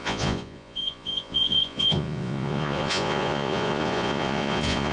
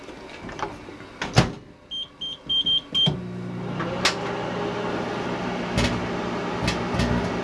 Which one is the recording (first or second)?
second